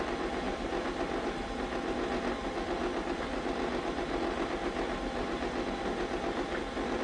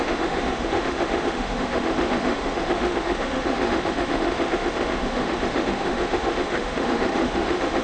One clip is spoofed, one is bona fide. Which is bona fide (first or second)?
first